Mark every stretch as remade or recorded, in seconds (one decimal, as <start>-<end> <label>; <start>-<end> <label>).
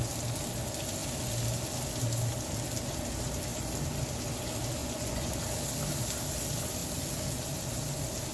0.0-4.8 recorded; 4.8-5.3 remade; 5.3-8.3 recorded